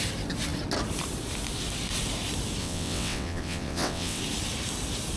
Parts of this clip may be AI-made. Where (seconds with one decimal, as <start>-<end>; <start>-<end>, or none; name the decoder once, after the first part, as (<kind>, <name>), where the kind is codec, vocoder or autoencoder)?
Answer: 2.6-4.2 (vocoder, WaveNeXt)